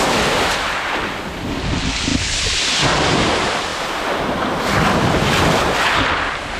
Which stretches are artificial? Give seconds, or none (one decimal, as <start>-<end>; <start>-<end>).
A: none